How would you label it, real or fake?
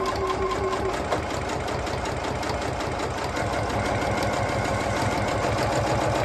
real